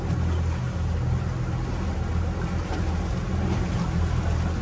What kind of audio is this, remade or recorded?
recorded